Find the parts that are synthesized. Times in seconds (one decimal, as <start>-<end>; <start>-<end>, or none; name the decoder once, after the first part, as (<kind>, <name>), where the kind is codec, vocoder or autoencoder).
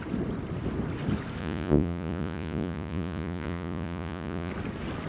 1.4-4.5 (vocoder, Vocos)